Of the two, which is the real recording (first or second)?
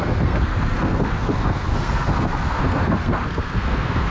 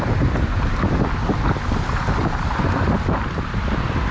second